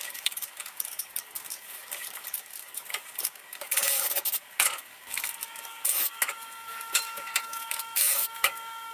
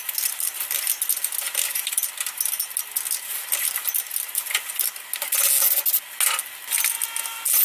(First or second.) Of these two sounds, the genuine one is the second